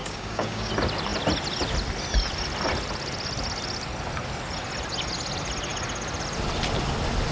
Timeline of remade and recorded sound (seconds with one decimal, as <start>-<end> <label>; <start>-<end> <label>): 0.0-0.7 remade; 0.7-7.3 recorded

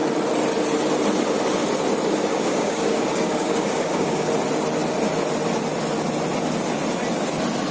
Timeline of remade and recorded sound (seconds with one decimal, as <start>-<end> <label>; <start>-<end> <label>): 0.0-2.3 recorded; 2.3-4.3 remade; 4.3-7.7 recorded

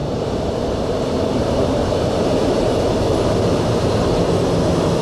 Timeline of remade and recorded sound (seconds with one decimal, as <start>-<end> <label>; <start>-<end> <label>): 0.0-3.0 remade; 3.0-5.0 recorded

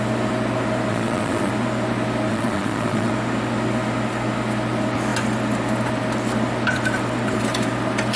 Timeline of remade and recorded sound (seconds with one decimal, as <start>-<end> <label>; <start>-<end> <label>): 0.0-0.9 recorded; 0.9-1.5 remade; 1.5-2.3 recorded; 2.3-3.1 remade; 3.1-8.2 recorded

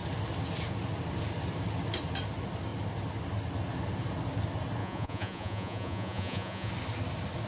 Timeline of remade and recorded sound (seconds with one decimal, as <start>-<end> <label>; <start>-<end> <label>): 0.0-4.8 recorded; 4.8-6.7 remade; 6.7-7.5 recorded

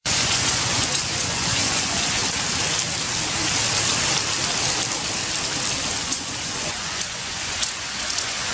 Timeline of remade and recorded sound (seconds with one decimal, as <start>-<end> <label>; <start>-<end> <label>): 0.0-2.2 remade; 2.2-6.0 recorded; 6.0-8.5 remade

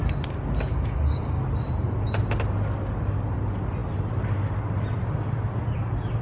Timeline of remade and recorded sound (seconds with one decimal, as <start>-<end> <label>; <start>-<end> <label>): 0.0-0.7 recorded; 0.7-1.4 remade; 1.4-6.2 recorded

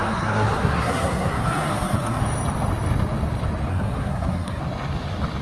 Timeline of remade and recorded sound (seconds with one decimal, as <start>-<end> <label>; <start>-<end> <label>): 0.0-2.2 remade; 2.2-3.7 recorded; 3.7-4.6 remade; 4.6-5.4 recorded